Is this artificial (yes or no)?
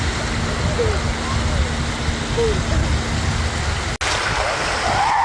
no